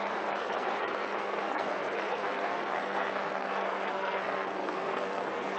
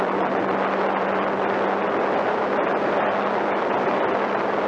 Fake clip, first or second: first